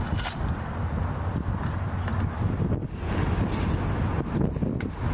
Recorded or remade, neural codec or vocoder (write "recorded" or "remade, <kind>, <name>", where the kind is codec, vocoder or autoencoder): recorded